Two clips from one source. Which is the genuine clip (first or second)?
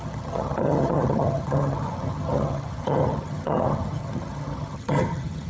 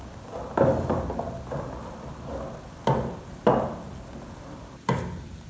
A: second